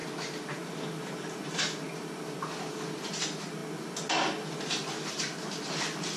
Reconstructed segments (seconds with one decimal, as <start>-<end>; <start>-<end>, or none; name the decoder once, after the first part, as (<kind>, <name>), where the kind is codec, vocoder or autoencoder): none